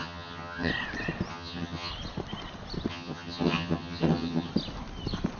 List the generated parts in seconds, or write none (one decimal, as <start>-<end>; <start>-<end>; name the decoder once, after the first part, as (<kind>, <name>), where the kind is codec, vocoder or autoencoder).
0.0-0.7 (vocoder, HiFi-GAN); 1.3-1.9; 2.9-4.5